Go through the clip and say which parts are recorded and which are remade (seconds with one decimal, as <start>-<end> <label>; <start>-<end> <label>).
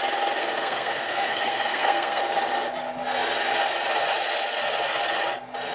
0.0-0.4 recorded; 0.4-2.2 remade; 2.2-5.7 recorded